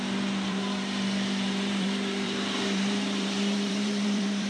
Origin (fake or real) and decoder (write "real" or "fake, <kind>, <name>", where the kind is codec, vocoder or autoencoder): fake, vocoder, BigVGAN v2